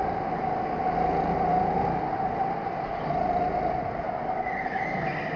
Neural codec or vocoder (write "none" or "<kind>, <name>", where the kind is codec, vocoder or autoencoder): none